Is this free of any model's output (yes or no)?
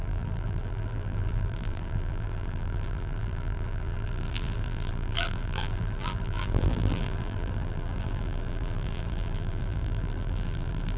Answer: no